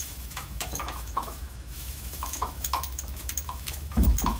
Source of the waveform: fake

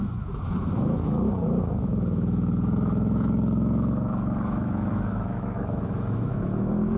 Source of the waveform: fake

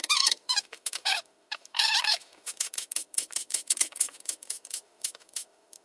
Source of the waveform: fake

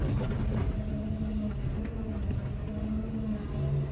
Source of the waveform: real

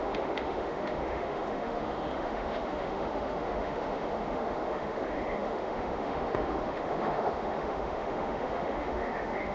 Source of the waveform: fake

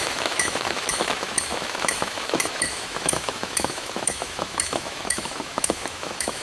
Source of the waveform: fake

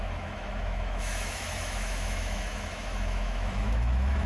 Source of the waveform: fake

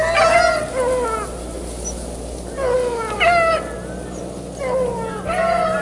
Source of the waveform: real